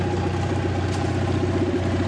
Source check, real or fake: real